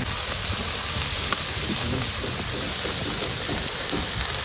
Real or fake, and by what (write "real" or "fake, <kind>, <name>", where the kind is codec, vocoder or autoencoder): real